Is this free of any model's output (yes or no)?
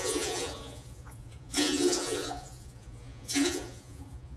no